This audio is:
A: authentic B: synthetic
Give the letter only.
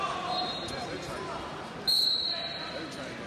A